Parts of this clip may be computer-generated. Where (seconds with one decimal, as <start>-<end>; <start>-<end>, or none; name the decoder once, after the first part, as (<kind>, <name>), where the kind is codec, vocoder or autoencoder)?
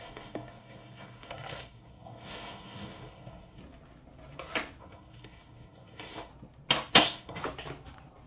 0.0-3.6 (codec, SNAC); 4.8-6.3; 6.9-7.4